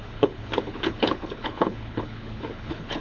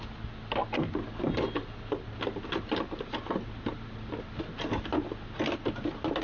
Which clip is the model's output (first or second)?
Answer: first